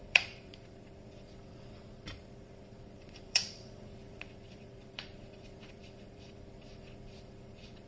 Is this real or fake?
fake